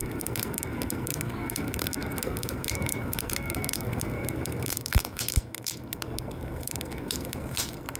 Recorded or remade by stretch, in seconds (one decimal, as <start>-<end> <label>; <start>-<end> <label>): 0.0-8.0 remade